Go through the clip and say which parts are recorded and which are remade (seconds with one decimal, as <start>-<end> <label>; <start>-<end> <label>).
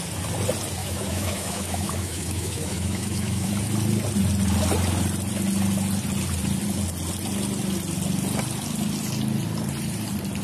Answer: 0.0-0.8 recorded; 0.8-3.5 remade; 3.5-10.4 recorded